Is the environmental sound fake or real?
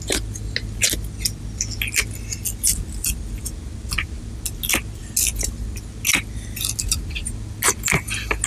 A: real